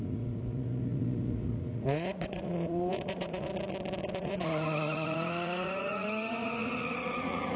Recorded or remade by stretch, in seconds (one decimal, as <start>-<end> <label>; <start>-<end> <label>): 0.0-3.5 remade; 3.5-4.1 recorded; 4.1-7.6 remade